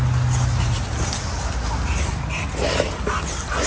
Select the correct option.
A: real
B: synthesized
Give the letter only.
A